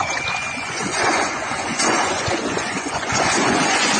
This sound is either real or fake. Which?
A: fake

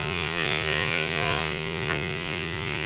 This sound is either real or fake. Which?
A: fake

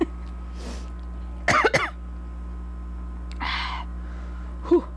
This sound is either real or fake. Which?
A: real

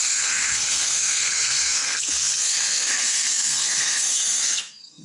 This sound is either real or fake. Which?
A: fake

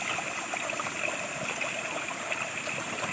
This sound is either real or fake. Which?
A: real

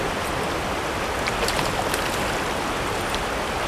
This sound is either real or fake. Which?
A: real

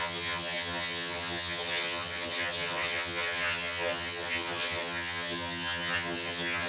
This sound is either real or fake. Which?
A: fake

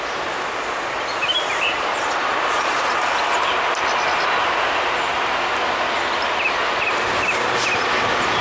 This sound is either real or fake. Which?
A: real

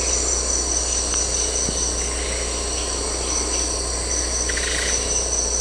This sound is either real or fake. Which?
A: real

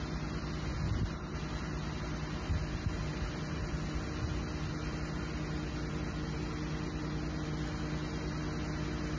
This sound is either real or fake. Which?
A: real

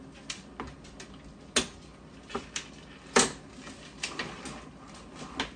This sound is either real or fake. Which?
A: real